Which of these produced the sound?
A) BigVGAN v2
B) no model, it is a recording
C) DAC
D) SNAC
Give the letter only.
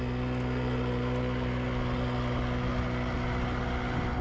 B